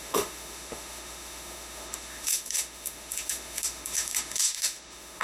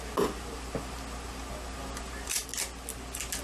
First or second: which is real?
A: second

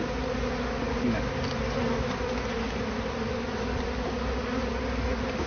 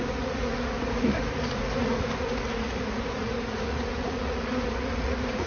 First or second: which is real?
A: first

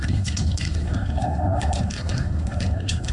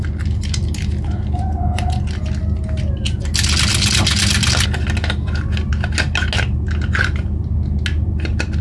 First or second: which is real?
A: second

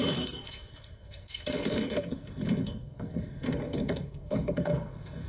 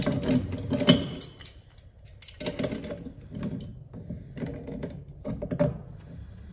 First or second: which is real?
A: second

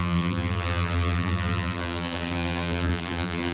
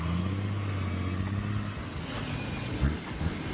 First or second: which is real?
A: second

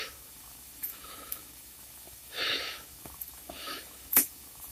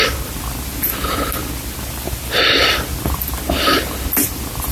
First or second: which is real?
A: second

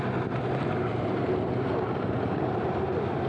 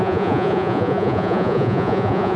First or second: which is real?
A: first